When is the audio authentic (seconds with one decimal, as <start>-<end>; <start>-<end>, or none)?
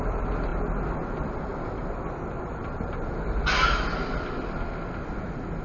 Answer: 0.5-2.4; 3.1-5.6